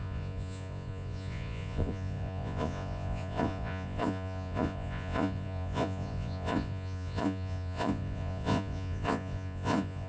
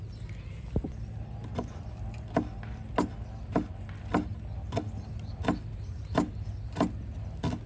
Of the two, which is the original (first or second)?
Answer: second